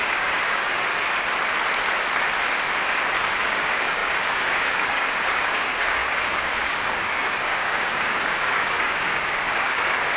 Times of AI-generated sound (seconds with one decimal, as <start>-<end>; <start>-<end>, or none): 0.0-0.9; 3.4-10.2